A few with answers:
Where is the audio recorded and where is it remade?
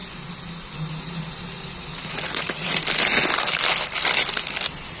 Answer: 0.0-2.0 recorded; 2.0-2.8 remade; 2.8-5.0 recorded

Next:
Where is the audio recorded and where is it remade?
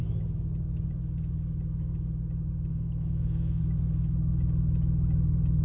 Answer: 0.0-2.7 recorded; 2.7-3.6 remade; 3.6-5.6 recorded